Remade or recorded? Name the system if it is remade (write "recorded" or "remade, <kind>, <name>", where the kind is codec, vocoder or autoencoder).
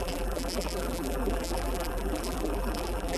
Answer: remade, vocoder, BigVGAN v2